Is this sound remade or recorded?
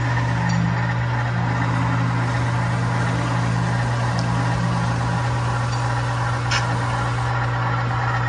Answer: recorded